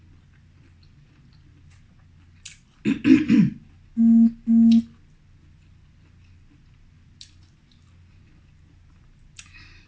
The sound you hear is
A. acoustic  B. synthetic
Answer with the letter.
A